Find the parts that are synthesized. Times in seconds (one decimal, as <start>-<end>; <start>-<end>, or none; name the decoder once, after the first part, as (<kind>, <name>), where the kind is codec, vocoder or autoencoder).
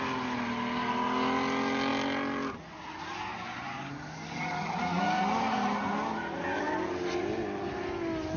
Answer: none